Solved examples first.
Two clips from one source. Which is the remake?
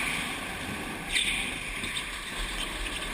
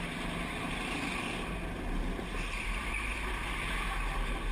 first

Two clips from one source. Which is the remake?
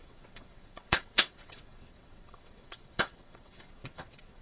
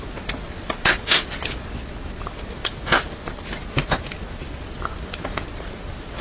first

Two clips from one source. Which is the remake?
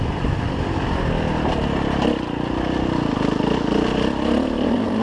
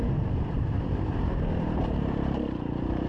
second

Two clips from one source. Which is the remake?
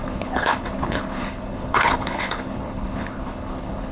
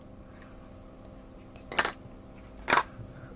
first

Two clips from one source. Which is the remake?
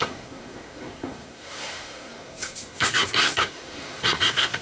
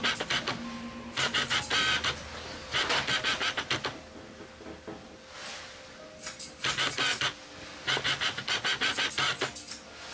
first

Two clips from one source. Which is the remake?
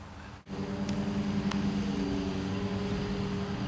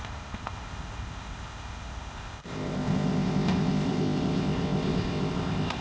second